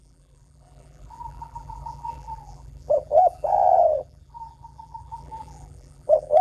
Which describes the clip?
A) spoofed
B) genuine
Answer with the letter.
A